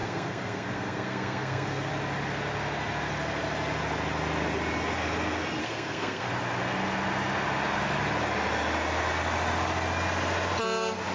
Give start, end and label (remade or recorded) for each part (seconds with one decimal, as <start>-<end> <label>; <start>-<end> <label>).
0.0-1.9 remade; 1.9-5.6 recorded; 5.6-6.3 remade; 6.3-11.1 recorded